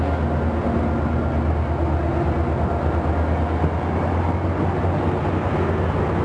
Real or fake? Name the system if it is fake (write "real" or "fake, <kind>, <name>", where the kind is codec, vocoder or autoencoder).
real